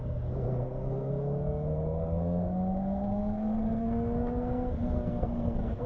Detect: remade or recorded remade